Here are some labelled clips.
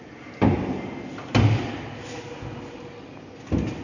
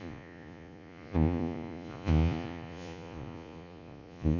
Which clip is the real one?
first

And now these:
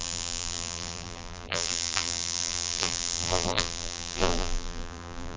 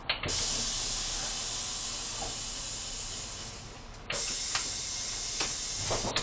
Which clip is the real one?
second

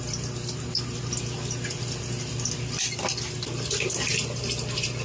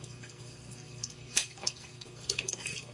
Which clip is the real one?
first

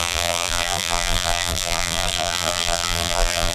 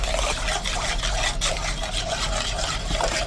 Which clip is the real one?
second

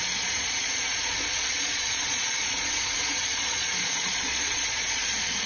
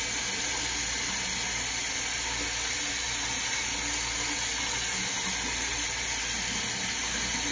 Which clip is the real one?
second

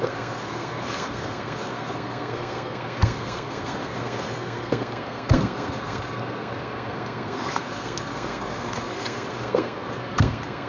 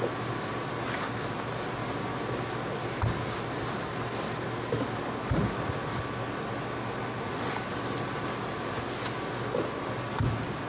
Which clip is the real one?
second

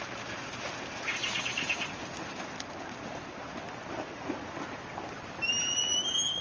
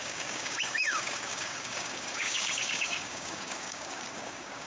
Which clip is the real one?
first